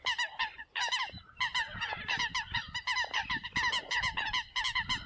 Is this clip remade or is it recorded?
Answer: recorded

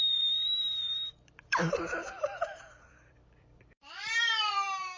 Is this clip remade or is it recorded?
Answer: remade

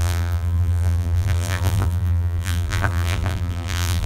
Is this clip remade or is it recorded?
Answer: remade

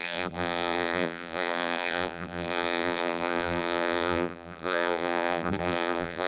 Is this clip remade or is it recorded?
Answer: remade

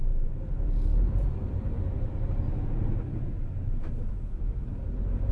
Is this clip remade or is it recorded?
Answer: remade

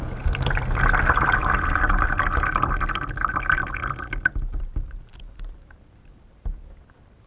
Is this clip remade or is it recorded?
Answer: remade